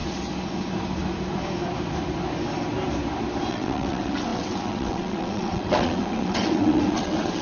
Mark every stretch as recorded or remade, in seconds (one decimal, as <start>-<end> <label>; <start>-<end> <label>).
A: 0.0-3.5 recorded; 3.5-7.4 remade